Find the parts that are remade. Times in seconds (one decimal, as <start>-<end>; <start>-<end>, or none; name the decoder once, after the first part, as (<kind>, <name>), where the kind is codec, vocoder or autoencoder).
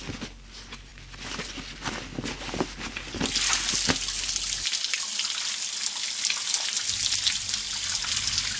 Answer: none